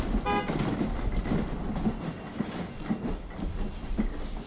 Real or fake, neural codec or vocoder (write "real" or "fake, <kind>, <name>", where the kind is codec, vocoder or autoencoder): real